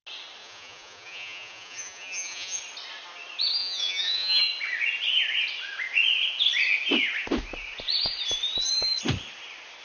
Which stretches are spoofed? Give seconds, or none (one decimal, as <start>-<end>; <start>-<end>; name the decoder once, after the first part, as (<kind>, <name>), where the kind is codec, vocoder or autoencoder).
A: 0.4-2.6 (vocoder, Vocos); 3.6-4.4